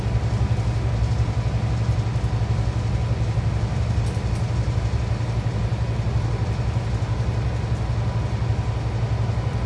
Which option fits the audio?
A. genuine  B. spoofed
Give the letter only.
A